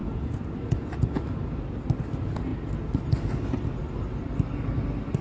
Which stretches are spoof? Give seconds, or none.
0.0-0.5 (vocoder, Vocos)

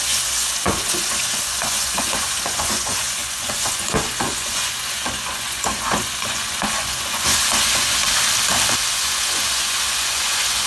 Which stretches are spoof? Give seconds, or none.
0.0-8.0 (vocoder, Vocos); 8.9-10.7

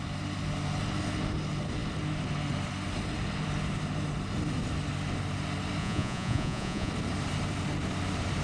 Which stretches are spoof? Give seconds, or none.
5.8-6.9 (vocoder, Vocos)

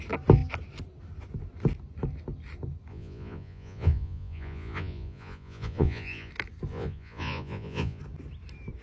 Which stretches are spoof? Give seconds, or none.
2.9-6.3 (vocoder, Vocos); 6.7-8.0

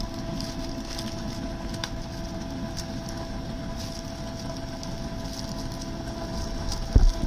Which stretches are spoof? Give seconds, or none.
none

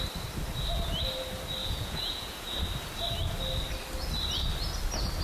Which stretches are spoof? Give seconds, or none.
1.6-2.6 (vocoder, Vocos)